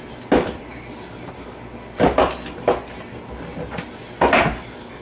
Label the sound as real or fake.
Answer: real